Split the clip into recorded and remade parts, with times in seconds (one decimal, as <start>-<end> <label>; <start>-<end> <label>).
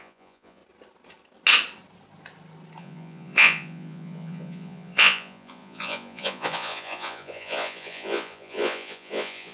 0.0-0.6 remade; 0.6-2.8 recorded; 2.8-9.5 remade